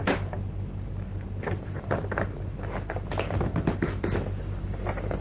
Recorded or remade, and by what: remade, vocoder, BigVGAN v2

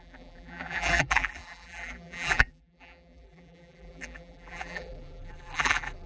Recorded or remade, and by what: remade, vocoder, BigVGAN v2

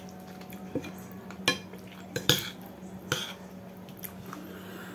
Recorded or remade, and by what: recorded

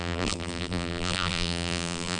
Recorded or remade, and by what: remade, vocoder, BigVGAN v2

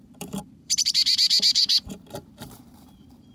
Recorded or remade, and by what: remade, vocoder, BigVGAN v2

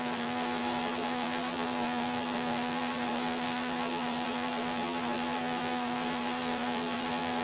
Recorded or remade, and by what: remade, vocoder, BigVGAN v2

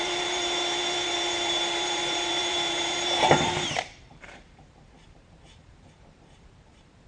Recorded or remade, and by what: remade, vocoder, BigVGAN v2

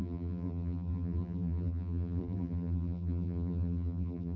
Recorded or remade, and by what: remade, vocoder, BigVGAN v2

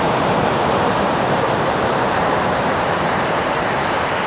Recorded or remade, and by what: remade, vocoder, BigVGAN v2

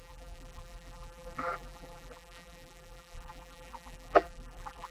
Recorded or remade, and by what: remade, vocoder, BigVGAN v2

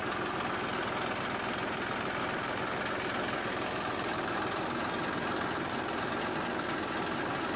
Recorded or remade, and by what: recorded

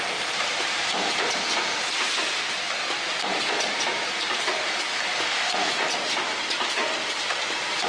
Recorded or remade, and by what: remade, vocoder, BigVGAN v2